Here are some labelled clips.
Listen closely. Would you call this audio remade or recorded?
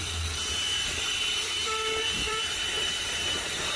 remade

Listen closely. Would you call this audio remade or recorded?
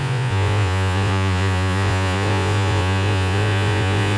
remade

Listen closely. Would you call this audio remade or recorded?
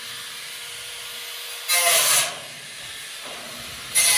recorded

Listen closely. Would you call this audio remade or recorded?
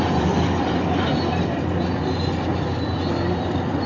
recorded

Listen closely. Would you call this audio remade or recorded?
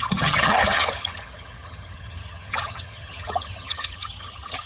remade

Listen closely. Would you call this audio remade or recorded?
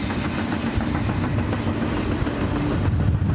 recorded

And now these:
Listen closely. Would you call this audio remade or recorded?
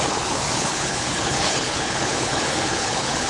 remade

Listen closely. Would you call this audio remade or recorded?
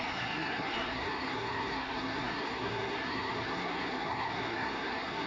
remade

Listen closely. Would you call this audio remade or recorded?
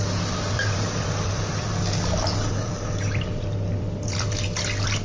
recorded